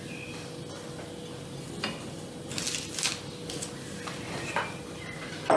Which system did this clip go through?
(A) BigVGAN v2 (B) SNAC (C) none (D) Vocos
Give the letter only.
C